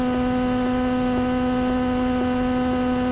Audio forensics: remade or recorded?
recorded